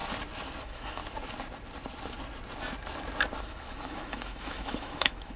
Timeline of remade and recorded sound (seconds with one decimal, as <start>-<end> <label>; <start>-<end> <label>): 0.0-0.6 recorded; 0.6-1.0 remade; 1.0-3.4 recorded; 3.4-5.4 remade

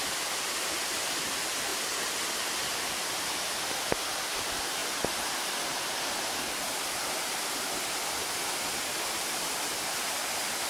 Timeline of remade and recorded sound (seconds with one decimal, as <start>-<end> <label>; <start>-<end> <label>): 0.0-10.7 recorded

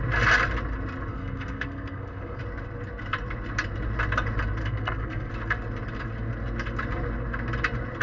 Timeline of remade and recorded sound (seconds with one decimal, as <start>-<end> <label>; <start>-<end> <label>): 0.0-1.1 recorded; 1.1-2.4 remade; 2.4-4.6 recorded; 4.6-5.3 remade; 5.3-8.0 recorded

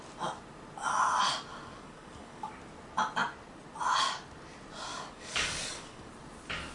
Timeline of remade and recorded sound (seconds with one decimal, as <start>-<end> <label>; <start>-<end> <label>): 0.0-1.5 recorded; 1.5-2.5 remade; 2.5-4.9 recorded; 4.9-6.1 remade; 6.1-6.7 recorded

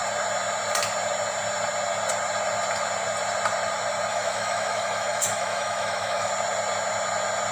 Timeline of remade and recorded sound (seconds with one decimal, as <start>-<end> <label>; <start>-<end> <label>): 0.0-4.1 recorded; 4.1-6.3 remade; 6.3-7.5 recorded

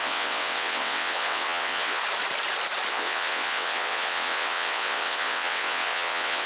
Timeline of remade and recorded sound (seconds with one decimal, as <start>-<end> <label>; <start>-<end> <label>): 0.0-2.0 remade; 2.0-2.9 recorded; 2.9-6.5 remade

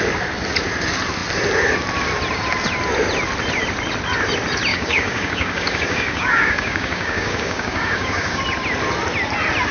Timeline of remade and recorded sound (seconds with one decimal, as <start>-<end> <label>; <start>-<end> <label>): 0.0-4.7 recorded; 4.7-8.4 remade; 8.4-9.7 recorded

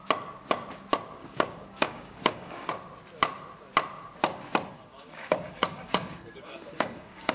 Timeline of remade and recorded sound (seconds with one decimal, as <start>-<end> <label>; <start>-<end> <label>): 0.0-1.2 recorded; 1.2-2.7 remade; 2.7-4.9 recorded; 4.9-7.3 remade